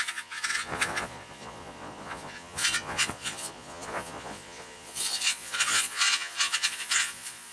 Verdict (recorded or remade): remade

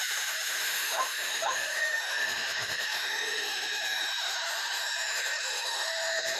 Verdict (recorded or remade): remade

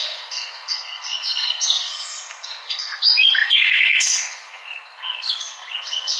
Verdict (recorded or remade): remade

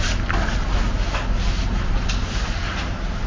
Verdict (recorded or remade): recorded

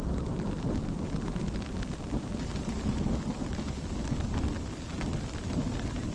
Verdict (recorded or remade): recorded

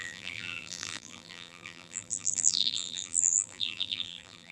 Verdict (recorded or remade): remade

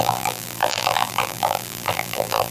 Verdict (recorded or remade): remade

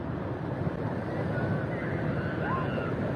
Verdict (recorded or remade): recorded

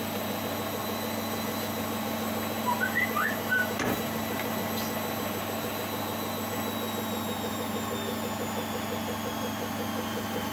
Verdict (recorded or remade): recorded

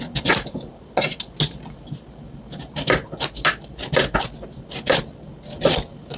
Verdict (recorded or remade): recorded